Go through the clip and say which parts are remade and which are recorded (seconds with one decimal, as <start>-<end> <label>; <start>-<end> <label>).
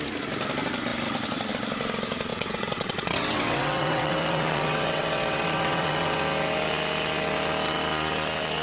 0.0-2.3 recorded; 2.3-6.2 remade; 6.2-8.6 recorded